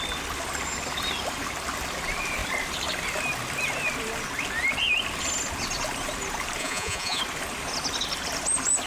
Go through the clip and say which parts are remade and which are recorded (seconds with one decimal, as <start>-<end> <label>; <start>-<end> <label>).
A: 0.0-6.6 recorded; 6.6-7.2 remade; 7.2-8.9 recorded